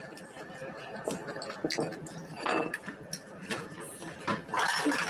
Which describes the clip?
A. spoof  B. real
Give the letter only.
B